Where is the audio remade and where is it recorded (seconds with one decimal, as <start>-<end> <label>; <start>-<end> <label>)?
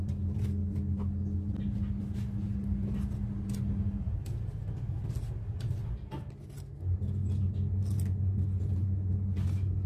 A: 0.0-9.9 recorded